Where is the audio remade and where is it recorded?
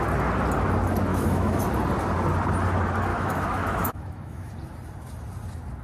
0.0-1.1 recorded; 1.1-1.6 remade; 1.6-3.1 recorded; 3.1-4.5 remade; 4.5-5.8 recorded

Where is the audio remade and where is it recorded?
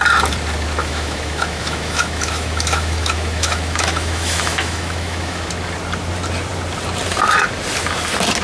0.0-0.8 recorded; 0.8-5.5 remade; 5.5-8.4 recorded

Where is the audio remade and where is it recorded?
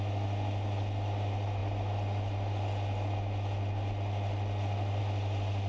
0.0-5.7 recorded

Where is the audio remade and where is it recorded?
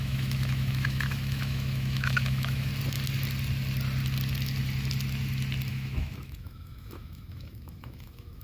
0.0-2.7 remade; 2.7-5.7 recorded; 5.7-8.4 remade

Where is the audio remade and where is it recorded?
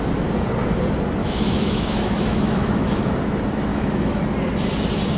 0.0-1.2 recorded; 1.2-3.0 remade; 3.0-3.7 recorded; 3.7-4.2 remade; 4.2-5.2 recorded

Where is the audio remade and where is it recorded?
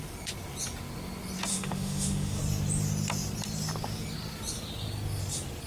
0.0-1.5 recorded; 1.5-2.4 remade; 2.4-5.7 recorded